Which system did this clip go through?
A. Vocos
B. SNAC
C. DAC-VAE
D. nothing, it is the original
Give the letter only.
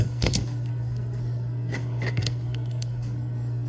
B